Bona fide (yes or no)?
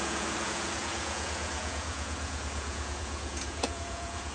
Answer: no